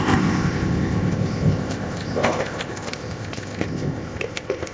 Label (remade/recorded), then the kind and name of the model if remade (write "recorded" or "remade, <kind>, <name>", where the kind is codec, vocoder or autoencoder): remade, codec, ZipCodec